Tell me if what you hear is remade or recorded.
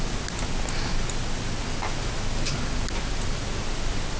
recorded